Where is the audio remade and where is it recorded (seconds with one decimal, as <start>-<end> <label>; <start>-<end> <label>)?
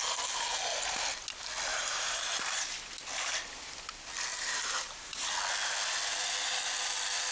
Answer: 0.0-1.7 recorded; 1.7-2.7 remade; 2.7-4.3 recorded; 4.3-5.3 remade; 5.3-7.3 recorded